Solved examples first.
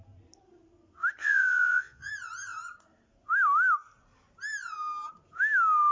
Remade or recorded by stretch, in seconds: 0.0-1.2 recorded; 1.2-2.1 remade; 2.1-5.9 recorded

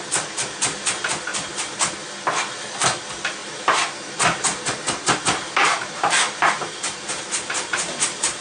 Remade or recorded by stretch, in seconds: 0.0-1.3 recorded; 1.3-1.9 remade; 1.9-3.4 recorded; 3.4-8.4 remade

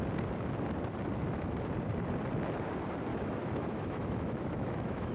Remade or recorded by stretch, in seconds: 0.0-3.1 recorded; 3.1-5.1 remade

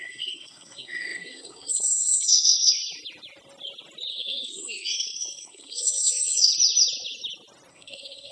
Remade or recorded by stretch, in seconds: 0.0-2.8 remade; 2.8-4.1 recorded; 4.1-6.5 remade; 6.5-7.7 recorded; 7.7-8.3 remade

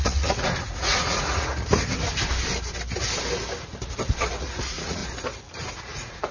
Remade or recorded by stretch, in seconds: 0.0-1.5 remade; 1.5-4.3 recorded; 4.3-5.0 remade; 5.0-5.7 recorded; 5.7-6.3 remade

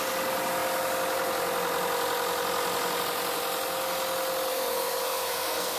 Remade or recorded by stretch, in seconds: 0.0-4.5 recorded; 4.5-5.8 remade

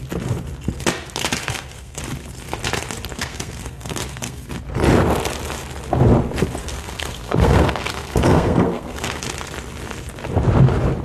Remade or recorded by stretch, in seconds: 0.0-1.4 recorded; 1.4-2.0 remade; 2.0-3.1 recorded; 3.1-4.5 remade; 4.5-6.6 recorded; 6.6-9.2 remade; 9.2-11.0 recorded